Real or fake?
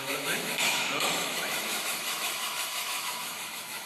fake